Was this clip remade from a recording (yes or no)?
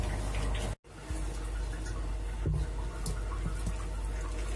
no